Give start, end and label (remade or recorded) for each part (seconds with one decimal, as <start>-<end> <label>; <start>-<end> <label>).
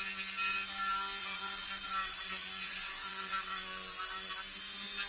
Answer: 0.0-1.2 recorded; 1.2-4.3 remade; 4.3-5.1 recorded